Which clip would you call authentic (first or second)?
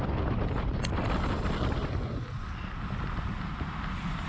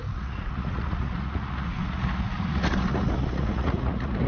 first